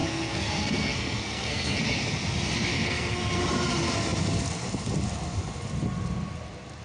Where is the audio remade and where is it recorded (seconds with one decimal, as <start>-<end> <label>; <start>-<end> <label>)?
0.0-1.8 remade; 1.8-2.7 recorded; 2.7-3.4 remade; 3.4-6.8 recorded